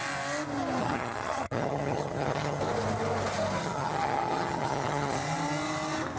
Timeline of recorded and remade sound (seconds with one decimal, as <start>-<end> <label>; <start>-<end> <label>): 0.0-0.8 recorded; 0.8-2.6 remade; 2.6-3.6 recorded; 3.6-5.2 remade; 5.2-6.2 recorded